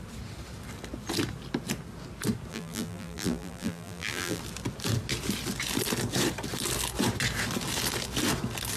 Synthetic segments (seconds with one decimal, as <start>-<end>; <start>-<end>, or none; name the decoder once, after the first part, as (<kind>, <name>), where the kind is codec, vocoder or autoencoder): 2.5-4.4 (vocoder, BigVGAN v2)